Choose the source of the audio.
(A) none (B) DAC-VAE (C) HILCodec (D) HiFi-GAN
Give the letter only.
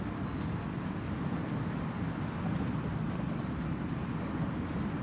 A